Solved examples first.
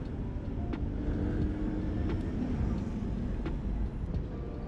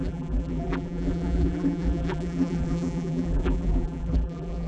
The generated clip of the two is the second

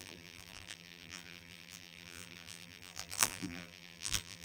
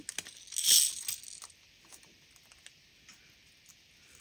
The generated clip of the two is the first